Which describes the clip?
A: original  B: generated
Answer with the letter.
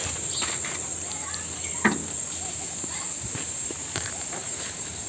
A